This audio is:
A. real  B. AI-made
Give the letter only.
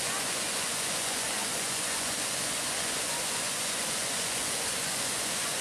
B